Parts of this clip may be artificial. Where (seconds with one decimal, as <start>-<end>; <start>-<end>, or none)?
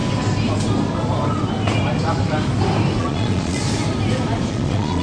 3.0-3.6; 4.5-5.0